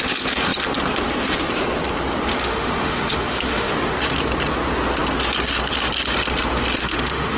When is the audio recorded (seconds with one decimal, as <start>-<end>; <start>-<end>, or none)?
0.0-2.3; 3.7-6.8